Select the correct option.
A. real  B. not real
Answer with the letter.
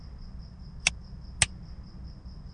A